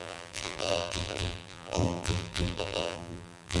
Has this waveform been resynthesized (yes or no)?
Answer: yes